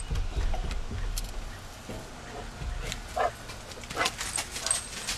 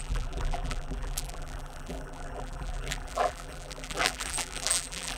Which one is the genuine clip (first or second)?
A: first